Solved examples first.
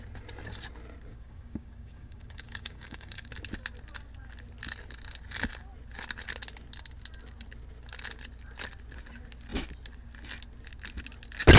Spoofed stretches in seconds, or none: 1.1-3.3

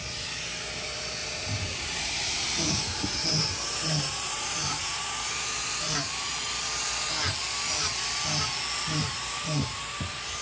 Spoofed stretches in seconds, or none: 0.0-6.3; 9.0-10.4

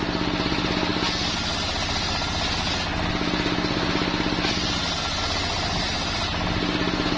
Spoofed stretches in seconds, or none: none

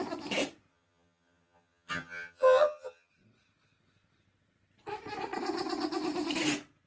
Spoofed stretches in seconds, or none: 0.7-3.1

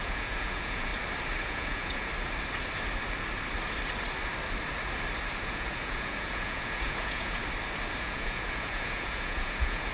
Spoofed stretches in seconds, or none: 0.0-0.9; 1.4-2.1; 5.4-7.4; 8.0-9.9

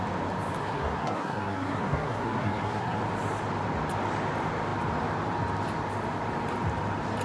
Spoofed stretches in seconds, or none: 0.6-3.0

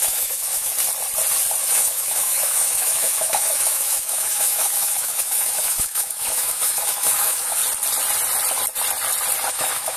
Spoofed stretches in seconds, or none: 0.0-0.7; 1.6-7.6; 9.5-10.0